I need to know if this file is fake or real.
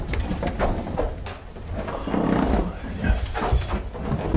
real